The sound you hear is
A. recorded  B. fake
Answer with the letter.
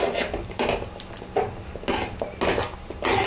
A